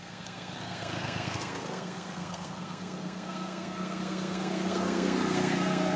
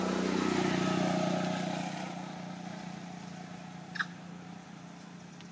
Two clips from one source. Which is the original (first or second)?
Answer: second